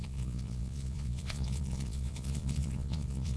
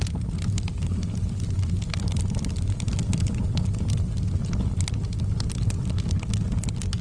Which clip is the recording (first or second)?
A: second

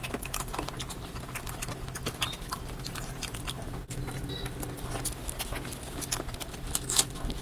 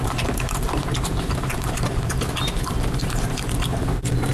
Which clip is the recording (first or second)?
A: first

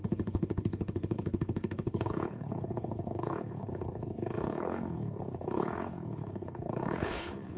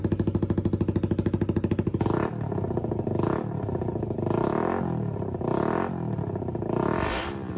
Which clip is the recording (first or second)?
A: second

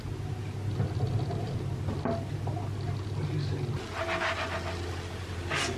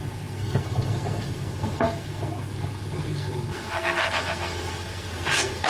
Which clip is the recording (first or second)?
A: first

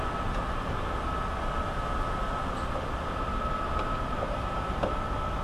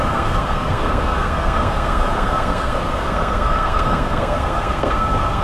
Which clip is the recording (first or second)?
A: first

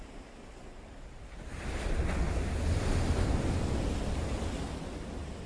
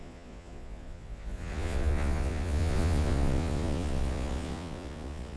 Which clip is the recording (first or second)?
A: first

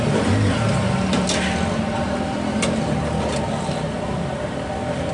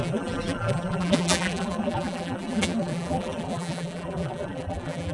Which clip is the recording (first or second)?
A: first